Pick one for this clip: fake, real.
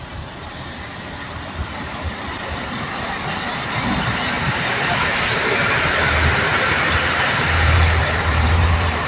fake